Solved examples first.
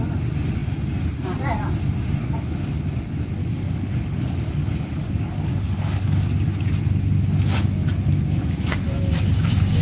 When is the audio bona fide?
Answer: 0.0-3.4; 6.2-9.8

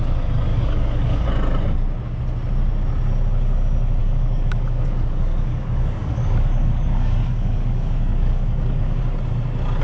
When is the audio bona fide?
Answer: 0.0-0.5; 1.3-4.0; 9.0-9.8

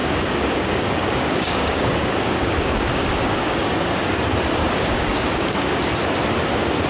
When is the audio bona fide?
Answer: 4.1-4.6; 5.9-6.9

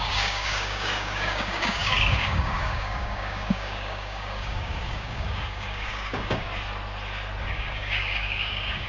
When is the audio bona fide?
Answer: 6.5-7.5

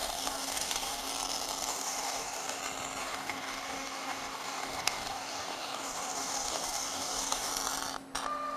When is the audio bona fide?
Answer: 1.1-1.7; 2.6-3.0; 7.5-8.6

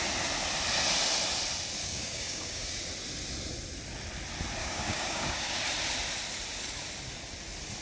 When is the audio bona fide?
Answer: 0.0-1.8; 2.8-4.6; 5.6-7.8

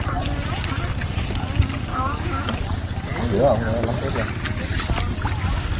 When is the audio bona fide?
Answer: 0.0-1.9; 2.6-5.8